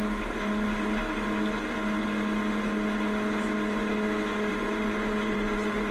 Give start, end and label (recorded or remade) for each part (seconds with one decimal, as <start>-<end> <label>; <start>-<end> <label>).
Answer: 0.0-1.0 remade; 1.0-4.5 recorded; 4.5-5.9 remade